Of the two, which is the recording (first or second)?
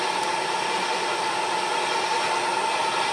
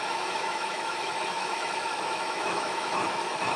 first